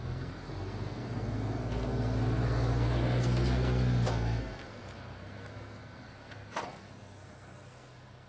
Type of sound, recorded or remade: remade